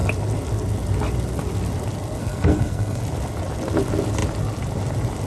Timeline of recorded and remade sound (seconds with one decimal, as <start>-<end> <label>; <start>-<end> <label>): 0.0-2.2 recorded; 2.2-3.0 remade; 3.0-5.3 recorded